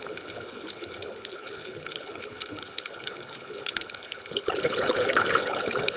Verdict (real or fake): fake